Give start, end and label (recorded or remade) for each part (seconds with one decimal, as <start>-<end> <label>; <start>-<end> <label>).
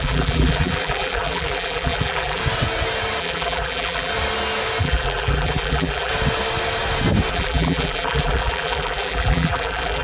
0.0-2.4 remade; 2.4-3.2 recorded; 3.2-4.1 remade; 4.1-4.8 recorded; 4.8-6.1 remade; 6.1-7.3 recorded; 7.3-10.0 remade